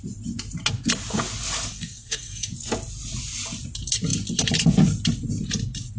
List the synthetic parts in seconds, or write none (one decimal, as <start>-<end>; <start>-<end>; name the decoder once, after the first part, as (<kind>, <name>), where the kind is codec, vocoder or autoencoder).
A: 1.7-2.5 (codec, SNAC)